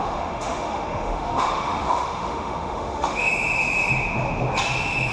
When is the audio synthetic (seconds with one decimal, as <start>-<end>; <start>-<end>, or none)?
0.0-3.3